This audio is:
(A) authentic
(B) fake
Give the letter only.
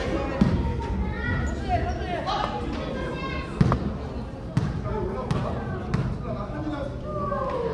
A